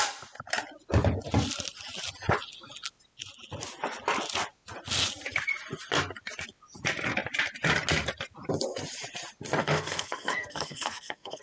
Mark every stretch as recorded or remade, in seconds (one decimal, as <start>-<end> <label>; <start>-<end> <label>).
0.0-9.6 recorded; 9.6-11.4 remade